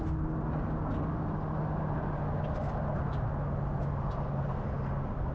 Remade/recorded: recorded